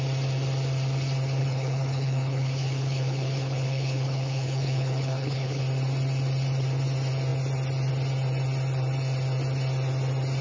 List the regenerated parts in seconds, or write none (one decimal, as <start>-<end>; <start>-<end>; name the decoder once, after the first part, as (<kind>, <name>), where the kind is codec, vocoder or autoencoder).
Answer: 1.4-5.6 (codec, HILCodec)